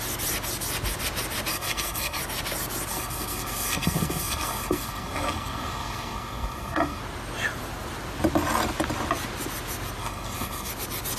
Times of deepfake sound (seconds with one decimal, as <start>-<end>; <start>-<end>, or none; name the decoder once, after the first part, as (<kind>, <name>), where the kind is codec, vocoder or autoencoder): 1.5-2.2 (codec, SNAC); 2.9-7.0; 10.0-10.7